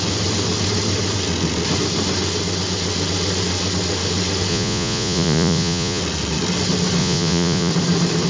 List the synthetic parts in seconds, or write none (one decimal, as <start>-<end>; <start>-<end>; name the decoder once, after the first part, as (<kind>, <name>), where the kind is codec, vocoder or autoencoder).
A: 4.5-6.0 (vocoder, Vocos); 7.0-7.7